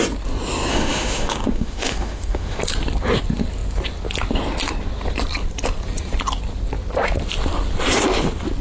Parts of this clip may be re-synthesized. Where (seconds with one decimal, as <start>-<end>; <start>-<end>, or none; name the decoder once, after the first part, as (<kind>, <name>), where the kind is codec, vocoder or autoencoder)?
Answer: 0.7-2.6 (autoencoder, DAC-VAE)